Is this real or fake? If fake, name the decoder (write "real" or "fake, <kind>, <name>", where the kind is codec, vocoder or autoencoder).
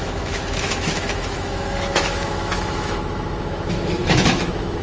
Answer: fake, autoencoder, DAC-VAE